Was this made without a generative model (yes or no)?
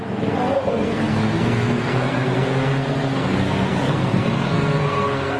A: no